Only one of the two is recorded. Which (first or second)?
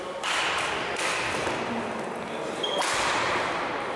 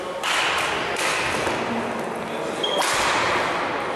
second